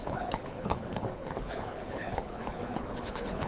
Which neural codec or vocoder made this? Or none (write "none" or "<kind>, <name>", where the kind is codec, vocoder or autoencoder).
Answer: codec, HILCodec